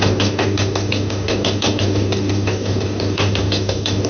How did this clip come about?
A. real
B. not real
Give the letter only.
B